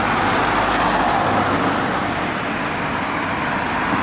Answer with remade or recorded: recorded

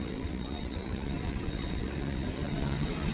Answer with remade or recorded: remade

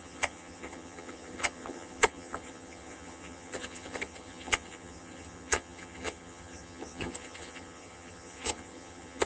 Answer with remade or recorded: remade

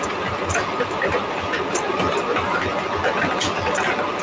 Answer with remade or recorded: recorded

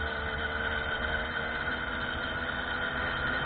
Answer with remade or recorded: recorded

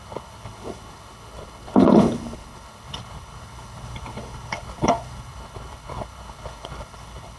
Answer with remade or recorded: remade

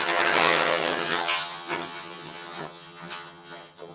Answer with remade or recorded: remade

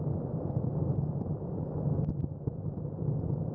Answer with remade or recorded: recorded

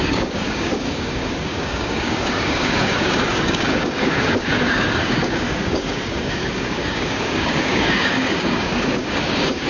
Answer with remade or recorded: remade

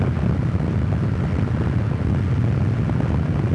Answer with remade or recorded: recorded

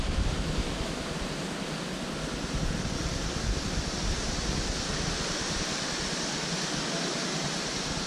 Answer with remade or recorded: recorded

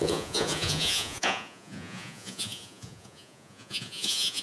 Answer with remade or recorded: remade